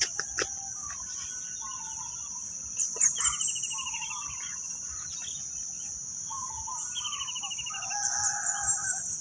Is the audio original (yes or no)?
yes